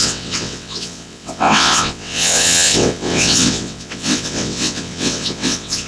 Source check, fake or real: fake